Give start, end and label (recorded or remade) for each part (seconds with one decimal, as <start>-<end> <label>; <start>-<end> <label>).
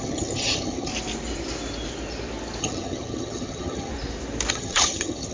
0.0-0.9 remade; 0.9-2.6 recorded; 2.6-3.9 remade; 3.9-4.5 recorded; 4.5-5.3 remade